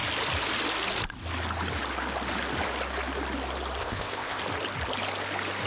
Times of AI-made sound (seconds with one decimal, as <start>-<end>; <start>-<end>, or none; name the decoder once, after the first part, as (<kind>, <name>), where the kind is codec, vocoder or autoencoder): 3.8-4.4 (codec, ZipCodec)